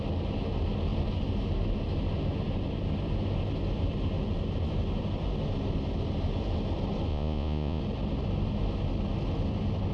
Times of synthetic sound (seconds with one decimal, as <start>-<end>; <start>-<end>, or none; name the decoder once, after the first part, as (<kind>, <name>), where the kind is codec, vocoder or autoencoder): 7.1-7.8 (vocoder, Vocos)